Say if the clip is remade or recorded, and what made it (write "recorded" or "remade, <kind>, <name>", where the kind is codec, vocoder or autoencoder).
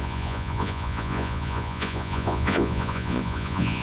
remade, vocoder, Vocos